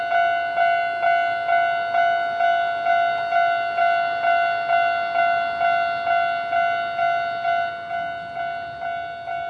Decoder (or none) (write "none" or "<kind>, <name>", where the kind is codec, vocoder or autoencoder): none